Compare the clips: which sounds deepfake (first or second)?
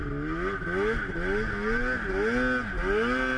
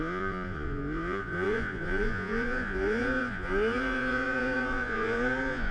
second